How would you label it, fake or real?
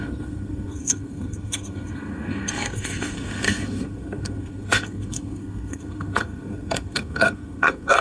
fake